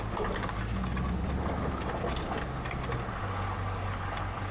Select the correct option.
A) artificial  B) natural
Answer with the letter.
B